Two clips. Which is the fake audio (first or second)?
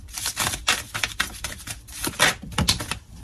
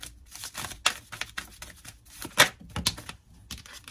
first